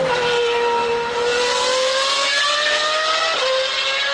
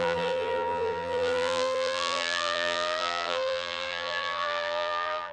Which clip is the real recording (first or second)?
first